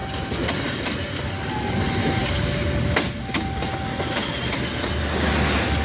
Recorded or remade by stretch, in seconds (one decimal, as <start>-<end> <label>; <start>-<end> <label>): 0.0-5.8 recorded